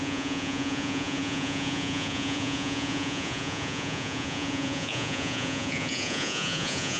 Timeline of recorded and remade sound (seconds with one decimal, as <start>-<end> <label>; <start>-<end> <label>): 0.0-7.0 remade